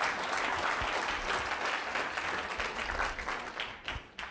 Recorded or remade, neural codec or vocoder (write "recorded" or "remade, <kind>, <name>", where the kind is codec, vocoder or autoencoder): recorded